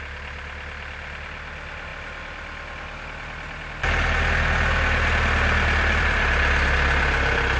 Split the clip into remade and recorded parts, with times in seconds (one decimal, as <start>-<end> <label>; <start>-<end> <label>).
0.0-7.6 recorded